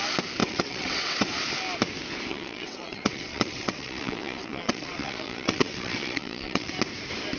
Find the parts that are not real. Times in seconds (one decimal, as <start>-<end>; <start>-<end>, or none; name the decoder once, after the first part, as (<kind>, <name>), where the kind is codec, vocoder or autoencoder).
0.4-1.3 (vocoder, WaveNeXt); 2.3-6.7